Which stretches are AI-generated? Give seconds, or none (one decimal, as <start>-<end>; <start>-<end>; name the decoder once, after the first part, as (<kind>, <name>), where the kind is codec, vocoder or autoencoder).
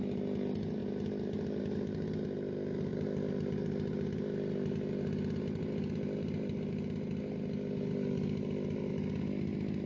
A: none